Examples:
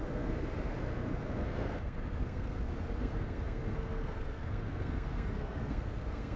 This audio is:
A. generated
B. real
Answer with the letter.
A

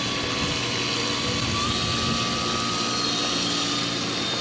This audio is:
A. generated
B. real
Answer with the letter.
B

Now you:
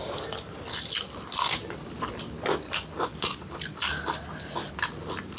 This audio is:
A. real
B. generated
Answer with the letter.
A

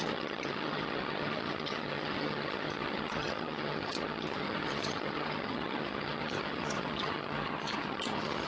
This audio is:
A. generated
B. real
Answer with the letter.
A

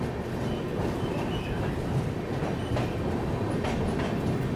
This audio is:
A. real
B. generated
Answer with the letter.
A